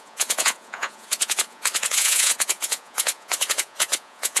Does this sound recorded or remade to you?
remade